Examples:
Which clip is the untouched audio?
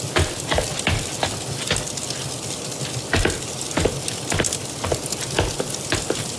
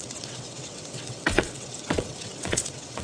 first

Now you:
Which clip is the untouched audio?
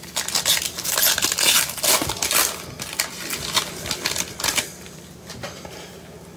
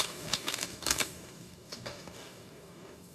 first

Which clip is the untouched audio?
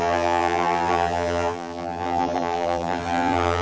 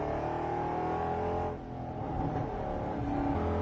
second